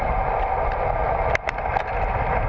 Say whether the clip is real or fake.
real